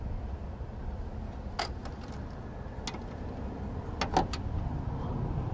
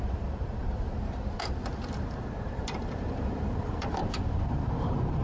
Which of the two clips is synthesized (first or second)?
second